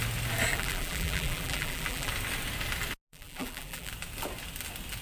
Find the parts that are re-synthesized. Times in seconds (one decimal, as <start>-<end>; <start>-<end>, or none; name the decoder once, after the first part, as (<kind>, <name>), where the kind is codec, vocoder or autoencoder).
0.5-2.1 (vocoder, BigVGAN v2); 3.1-3.9